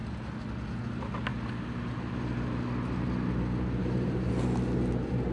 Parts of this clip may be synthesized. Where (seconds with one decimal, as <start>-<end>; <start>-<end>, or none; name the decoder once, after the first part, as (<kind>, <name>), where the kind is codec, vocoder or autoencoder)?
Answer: 3.8-4.3 (vocoder, BigVGAN v2)